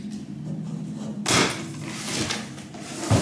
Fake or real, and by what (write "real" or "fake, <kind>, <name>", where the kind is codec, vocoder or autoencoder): real